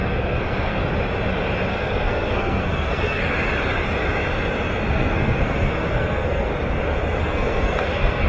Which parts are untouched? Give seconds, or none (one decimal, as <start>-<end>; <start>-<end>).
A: 0.8-1.7; 3.3-4.9; 6.5-7.2